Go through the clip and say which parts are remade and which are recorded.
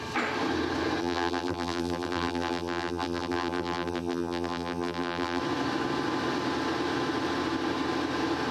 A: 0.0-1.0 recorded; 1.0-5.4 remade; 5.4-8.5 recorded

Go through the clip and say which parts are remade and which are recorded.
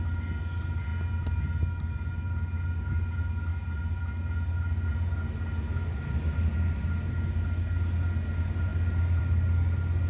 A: 0.0-10.1 recorded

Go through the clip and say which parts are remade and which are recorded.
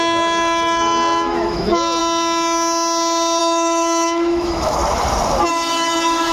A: 0.0-2.0 remade; 2.0-3.4 recorded; 3.4-4.8 remade; 4.8-5.5 recorded; 5.5-6.3 remade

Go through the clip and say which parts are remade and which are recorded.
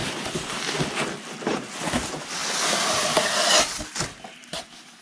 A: 0.0-0.8 remade; 0.8-1.5 recorded; 1.5-2.0 remade; 2.0-4.1 recorded; 4.1-4.6 remade; 4.6-5.0 recorded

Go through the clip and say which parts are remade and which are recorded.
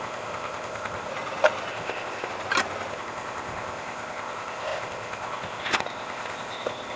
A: 0.0-1.1 remade; 1.1-1.7 recorded; 1.7-2.3 remade; 2.3-2.9 recorded; 2.9-7.0 remade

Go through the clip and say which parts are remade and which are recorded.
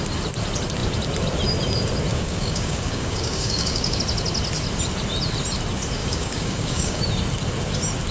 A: 0.0-2.1 recorded; 2.1-4.0 remade; 4.0-6.0 recorded; 6.0-7.0 remade; 7.0-8.1 recorded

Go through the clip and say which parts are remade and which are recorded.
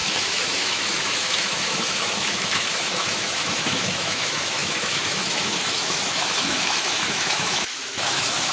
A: 0.0-8.5 remade